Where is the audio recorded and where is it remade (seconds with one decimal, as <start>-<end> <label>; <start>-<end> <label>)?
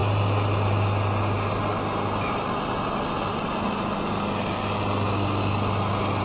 0.0-6.2 recorded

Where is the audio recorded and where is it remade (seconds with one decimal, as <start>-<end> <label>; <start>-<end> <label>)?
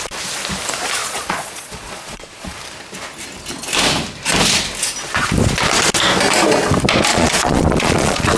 0.0-1.0 recorded; 1.0-2.6 remade; 2.6-7.1 recorded; 7.1-8.4 remade